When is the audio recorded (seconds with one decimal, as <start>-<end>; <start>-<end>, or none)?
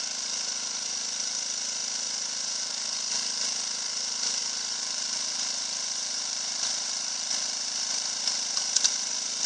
0.0-4.4; 8.2-9.5